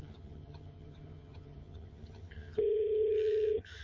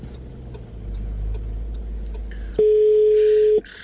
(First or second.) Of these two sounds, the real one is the second